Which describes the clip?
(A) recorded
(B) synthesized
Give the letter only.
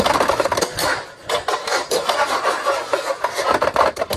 A